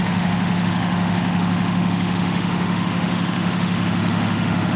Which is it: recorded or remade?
remade